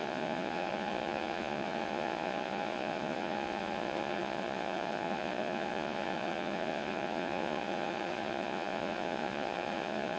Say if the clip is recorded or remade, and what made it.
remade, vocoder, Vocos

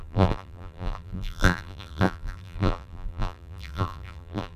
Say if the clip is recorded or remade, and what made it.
remade, vocoder, BigVGAN v2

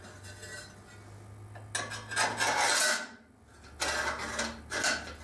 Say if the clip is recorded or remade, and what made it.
recorded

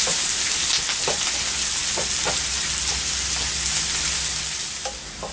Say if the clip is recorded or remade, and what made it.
recorded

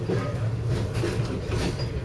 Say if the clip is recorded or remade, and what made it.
recorded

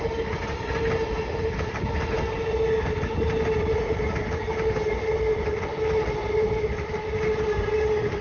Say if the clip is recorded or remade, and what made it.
recorded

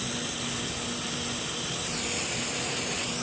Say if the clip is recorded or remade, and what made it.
recorded